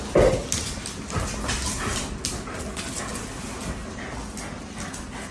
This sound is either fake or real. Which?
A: real